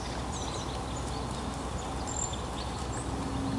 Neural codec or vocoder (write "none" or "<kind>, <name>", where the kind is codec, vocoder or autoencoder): none